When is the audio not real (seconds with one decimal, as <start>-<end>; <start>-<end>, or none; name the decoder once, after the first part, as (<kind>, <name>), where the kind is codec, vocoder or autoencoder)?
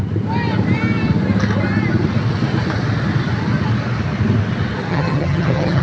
4.9-5.8 (vocoder, HiFi-GAN)